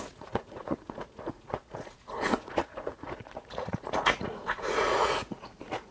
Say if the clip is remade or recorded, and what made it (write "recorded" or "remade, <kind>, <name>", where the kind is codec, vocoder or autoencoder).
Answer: remade, vocoder, Vocos